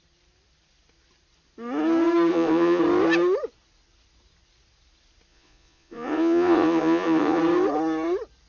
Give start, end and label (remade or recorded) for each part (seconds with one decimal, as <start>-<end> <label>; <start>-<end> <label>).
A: 0.0-2.3 recorded; 2.3-2.8 remade; 2.8-5.3 recorded; 5.3-7.4 remade; 7.4-8.5 recorded